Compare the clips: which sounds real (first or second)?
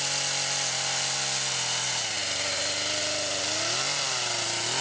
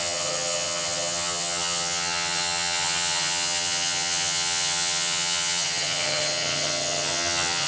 first